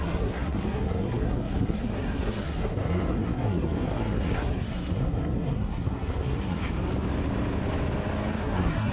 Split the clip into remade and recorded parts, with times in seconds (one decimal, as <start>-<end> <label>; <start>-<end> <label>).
0.0-6.6 remade; 6.6-8.4 recorded; 8.4-8.9 remade

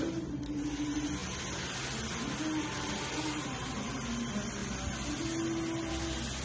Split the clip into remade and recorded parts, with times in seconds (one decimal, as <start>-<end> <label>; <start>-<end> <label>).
0.0-6.4 recorded